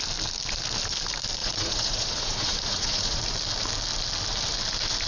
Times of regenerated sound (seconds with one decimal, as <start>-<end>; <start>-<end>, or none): 1.4-3.2